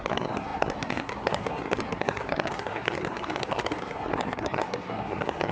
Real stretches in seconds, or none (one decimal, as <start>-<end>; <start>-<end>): none